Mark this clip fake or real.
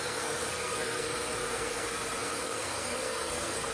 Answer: fake